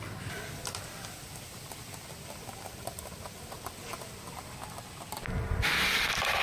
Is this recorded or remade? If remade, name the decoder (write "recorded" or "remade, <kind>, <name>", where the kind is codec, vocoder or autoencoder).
recorded